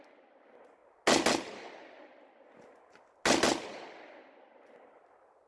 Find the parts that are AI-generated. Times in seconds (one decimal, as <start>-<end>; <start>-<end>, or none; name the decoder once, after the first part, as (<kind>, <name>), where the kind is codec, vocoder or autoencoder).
none